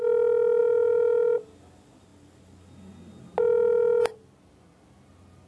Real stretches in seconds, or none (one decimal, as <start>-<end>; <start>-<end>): 0.0-5.5